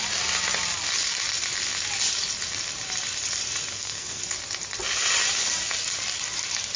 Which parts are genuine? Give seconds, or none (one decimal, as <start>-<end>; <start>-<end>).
0.0-3.7; 4.2-6.8